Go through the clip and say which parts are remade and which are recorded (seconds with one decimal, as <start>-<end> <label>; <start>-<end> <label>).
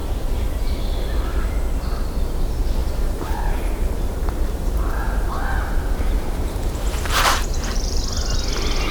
0.0-2.8 recorded; 2.8-8.0 remade; 8.0-8.9 recorded